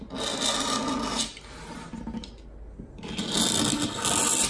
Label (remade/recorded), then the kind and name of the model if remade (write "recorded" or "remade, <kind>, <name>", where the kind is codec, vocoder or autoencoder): recorded